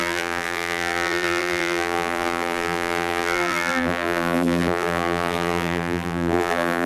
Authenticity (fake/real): fake